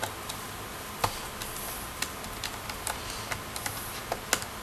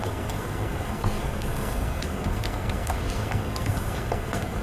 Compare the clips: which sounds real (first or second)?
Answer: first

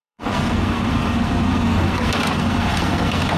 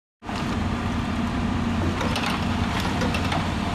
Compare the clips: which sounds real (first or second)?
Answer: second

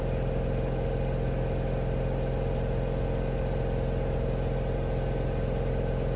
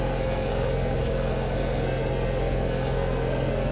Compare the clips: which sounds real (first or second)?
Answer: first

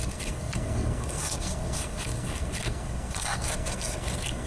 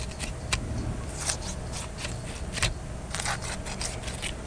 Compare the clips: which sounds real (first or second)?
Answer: second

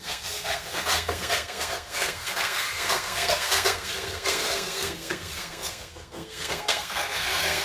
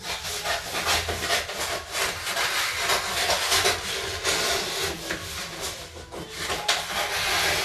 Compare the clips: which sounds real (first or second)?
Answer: second